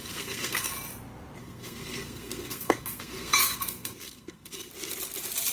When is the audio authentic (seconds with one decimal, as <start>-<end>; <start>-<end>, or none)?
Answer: 0.7-1.4; 4.7-5.5